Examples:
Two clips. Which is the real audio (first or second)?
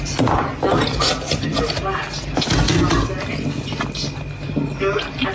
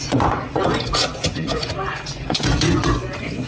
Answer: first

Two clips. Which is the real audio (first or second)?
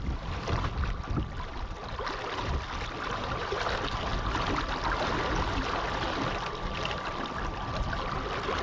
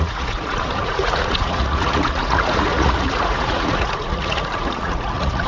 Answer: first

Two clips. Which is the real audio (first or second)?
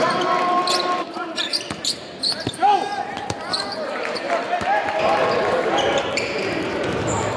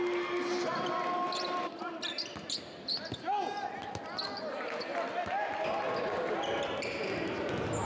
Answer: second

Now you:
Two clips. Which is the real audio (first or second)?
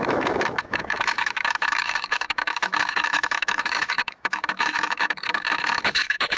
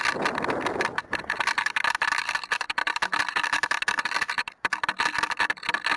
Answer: second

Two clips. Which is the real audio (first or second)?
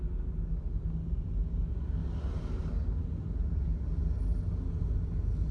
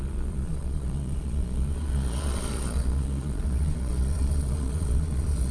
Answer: first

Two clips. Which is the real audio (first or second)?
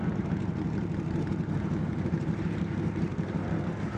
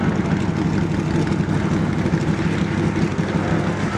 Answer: second